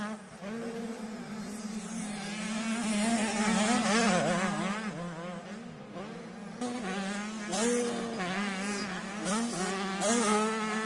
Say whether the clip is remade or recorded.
recorded